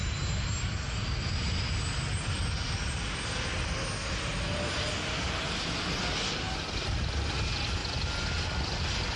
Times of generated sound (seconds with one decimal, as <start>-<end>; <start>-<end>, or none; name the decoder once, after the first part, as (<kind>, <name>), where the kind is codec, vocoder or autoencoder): none